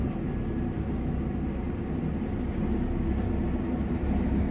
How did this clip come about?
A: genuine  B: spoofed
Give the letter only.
A